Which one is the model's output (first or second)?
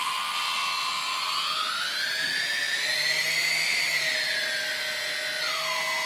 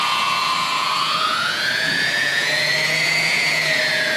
second